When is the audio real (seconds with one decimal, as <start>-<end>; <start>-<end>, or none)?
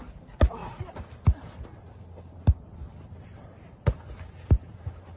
0.0-5.2